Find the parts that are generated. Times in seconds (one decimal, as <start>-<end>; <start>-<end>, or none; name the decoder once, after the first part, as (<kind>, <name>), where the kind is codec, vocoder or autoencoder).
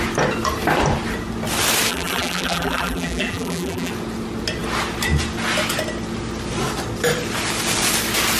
1.9-3.9 (vocoder, BigVGAN v2)